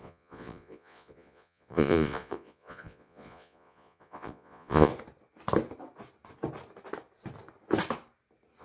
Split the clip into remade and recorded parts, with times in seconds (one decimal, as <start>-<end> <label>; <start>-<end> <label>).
0.0-4.9 remade; 4.9-8.6 recorded